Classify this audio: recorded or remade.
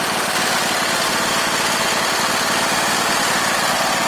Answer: recorded